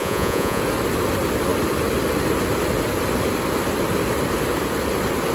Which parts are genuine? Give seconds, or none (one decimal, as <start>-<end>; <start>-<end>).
0.6-5.3